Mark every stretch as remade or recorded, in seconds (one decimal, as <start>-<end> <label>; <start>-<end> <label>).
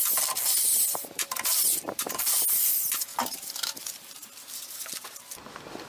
0.0-0.7 recorded; 0.7-2.2 remade; 2.2-3.1 recorded; 3.1-4.1 remade; 4.1-5.9 recorded